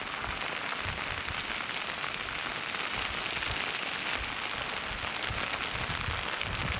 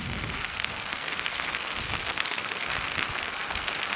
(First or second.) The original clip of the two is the first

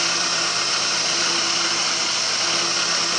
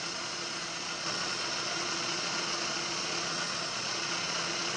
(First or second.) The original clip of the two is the first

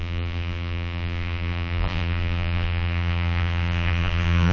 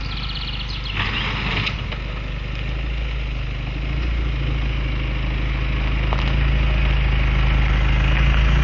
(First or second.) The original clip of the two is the second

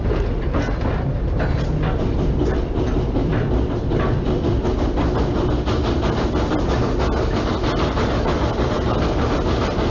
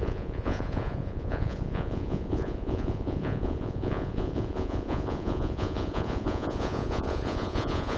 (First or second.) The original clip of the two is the first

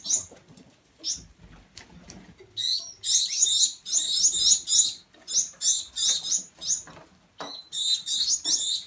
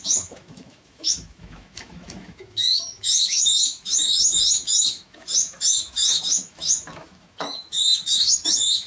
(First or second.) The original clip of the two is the first